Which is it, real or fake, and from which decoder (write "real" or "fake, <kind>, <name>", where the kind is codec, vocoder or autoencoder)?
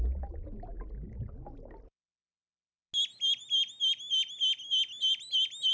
real